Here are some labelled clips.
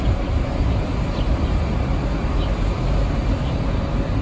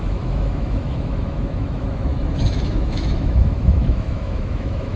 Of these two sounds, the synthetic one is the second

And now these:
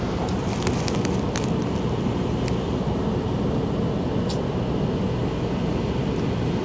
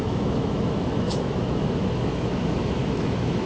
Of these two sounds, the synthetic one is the second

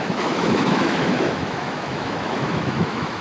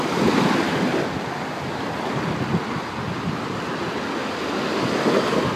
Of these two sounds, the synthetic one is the first